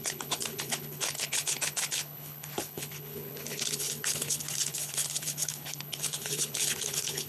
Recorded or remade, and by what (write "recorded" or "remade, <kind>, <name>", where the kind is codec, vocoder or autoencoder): remade, codec, HILCodec